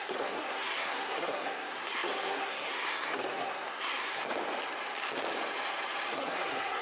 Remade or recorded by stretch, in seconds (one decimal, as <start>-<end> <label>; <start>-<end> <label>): 0.0-4.2 remade; 4.2-6.1 recorded; 6.1-6.8 remade